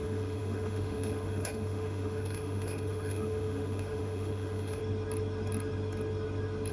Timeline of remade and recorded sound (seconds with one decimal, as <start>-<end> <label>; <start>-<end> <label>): 0.0-4.8 remade; 4.8-6.7 recorded